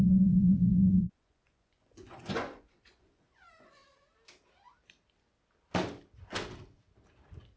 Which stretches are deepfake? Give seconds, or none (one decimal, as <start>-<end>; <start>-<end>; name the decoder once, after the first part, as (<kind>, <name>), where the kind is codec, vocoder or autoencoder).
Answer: 0.0-3.8 (vocoder, Vocos)

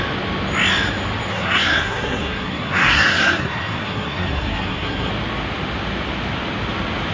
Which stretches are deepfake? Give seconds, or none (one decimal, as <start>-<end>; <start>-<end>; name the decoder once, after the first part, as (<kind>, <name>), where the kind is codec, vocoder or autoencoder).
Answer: 1.3-5.1 (codec, SNAC)

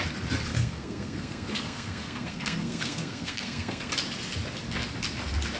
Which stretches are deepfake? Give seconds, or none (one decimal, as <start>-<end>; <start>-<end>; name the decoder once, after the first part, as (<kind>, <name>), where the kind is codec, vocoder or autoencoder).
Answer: 0.5-3.9 (codec, SNAC)

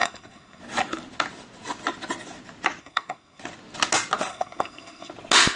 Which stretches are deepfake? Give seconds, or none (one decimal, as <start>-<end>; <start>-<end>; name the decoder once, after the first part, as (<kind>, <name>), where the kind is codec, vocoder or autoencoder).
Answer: 0.0-0.6 (codec, SNAC); 2.8-3.4; 4.3-5.1

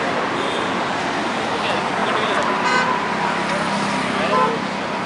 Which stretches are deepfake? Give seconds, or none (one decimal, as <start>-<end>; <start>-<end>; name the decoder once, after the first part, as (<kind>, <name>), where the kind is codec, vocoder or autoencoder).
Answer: none

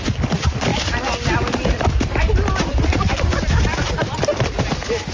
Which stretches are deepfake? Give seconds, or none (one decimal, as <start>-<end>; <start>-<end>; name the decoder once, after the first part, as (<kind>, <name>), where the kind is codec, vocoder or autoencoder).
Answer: none

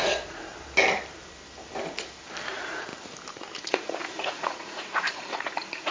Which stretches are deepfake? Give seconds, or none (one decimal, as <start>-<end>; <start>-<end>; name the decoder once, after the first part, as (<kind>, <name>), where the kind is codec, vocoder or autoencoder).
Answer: 0.0-0.5 (vocoder, Vocos); 2.5-2.9; 3.6-5.9